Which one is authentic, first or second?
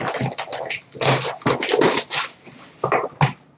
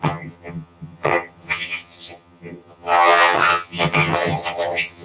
first